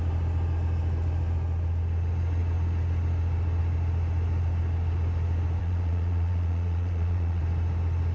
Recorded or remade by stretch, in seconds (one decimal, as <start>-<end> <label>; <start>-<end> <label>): 0.0-5.6 recorded; 5.6-7.4 remade; 7.4-8.1 recorded